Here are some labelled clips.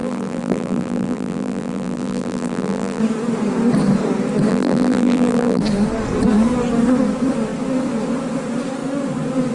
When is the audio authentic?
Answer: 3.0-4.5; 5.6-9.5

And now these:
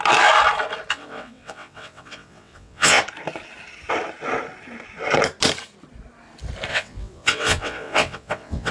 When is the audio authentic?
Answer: 0.0-0.9; 3.0-6.7

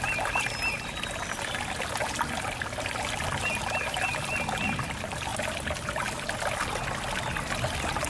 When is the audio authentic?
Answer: 0.0-8.1